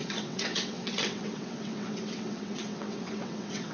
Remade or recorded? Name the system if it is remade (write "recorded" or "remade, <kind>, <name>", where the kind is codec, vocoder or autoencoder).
remade, vocoder, WaveNeXt